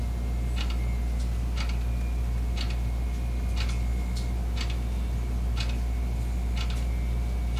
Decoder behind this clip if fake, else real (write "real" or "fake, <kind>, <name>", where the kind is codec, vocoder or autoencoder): real